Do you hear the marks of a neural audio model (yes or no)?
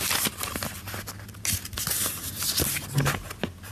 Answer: no